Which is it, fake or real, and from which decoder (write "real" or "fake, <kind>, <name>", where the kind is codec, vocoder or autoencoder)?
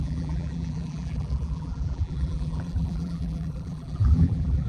fake, vocoder, BigVGAN v2